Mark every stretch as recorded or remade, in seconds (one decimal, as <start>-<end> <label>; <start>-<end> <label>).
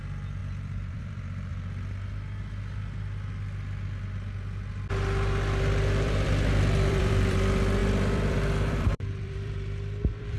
0.0-1.5 remade; 1.5-4.9 recorded; 4.9-10.4 remade